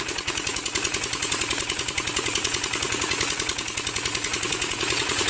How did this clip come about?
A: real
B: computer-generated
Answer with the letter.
B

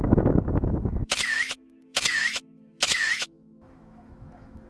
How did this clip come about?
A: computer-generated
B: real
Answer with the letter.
A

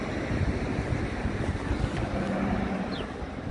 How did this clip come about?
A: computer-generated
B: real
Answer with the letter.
B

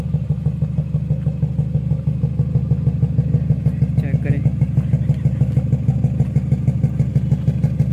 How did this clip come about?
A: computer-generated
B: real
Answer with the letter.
B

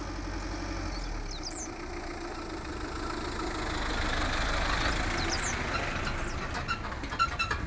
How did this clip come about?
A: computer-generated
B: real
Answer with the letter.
B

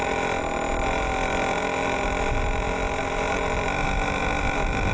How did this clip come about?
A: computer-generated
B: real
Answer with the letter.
A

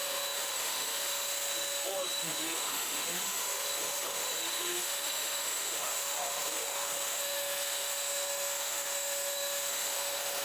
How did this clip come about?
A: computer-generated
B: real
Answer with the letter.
A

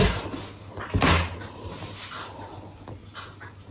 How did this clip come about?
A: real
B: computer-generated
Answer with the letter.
A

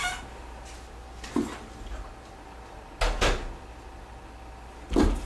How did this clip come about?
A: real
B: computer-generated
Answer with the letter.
A